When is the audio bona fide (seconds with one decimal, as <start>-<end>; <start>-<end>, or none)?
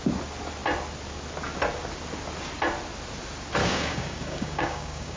0.0-3.6